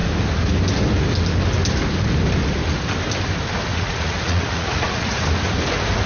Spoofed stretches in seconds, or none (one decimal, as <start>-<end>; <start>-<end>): 3.7-5.2